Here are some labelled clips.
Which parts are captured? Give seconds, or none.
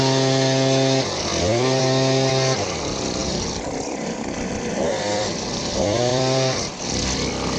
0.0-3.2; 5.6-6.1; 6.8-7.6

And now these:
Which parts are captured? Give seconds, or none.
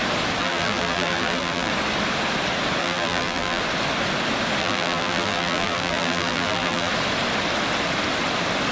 0.0-0.4; 1.7-2.8; 3.6-4.6; 6.9-8.7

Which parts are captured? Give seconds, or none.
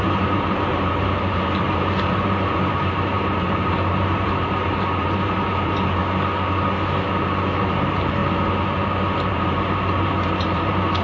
6.0-7.1; 8.2-9.3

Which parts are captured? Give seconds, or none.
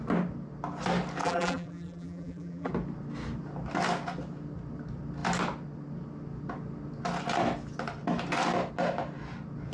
0.0-1.2; 2.7-9.7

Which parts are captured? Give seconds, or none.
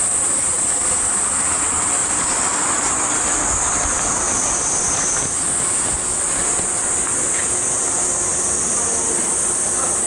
0.0-10.1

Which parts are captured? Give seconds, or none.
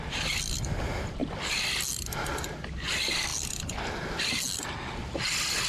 0.0-3.3; 4.2-5.7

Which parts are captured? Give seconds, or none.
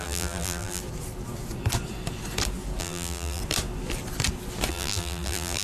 0.8-2.8; 3.4-4.7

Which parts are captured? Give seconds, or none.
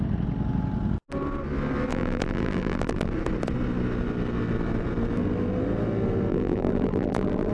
0.0-1.9; 3.1-6.3